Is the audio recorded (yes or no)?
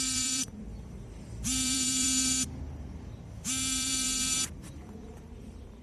no